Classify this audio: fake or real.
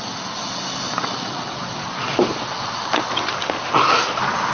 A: real